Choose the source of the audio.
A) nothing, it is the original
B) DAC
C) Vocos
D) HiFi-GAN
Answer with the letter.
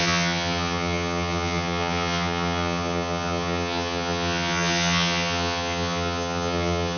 D